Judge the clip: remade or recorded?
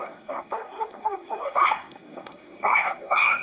remade